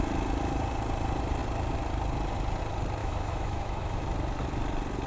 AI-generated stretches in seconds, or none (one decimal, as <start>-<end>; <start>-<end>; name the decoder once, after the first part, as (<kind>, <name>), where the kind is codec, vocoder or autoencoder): 3.0-4.0 (autoencoder, DAC-VAE)